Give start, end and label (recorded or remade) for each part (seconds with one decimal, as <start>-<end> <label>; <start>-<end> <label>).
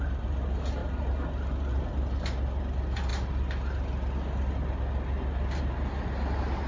0.0-6.7 recorded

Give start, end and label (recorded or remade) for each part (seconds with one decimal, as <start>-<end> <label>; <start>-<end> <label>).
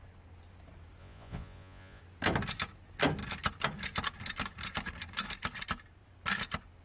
0.0-1.0 recorded; 1.0-2.0 remade; 2.0-6.8 recorded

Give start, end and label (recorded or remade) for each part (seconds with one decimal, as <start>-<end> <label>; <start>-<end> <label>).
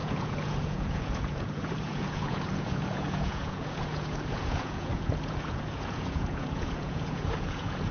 0.0-7.9 remade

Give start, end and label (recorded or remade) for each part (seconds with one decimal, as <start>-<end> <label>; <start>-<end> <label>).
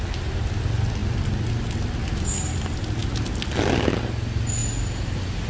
0.0-5.5 recorded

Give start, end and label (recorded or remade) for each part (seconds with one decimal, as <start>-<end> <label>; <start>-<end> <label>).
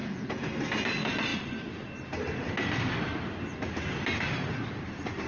0.0-0.5 remade; 0.5-5.3 recorded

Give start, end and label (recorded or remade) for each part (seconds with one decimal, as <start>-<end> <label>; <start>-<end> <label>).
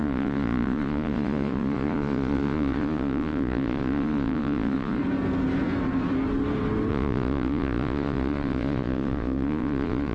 0.0-5.0 remade; 5.0-6.9 recorded; 6.9-10.1 remade